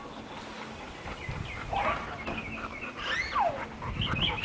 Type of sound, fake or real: real